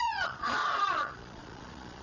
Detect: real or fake fake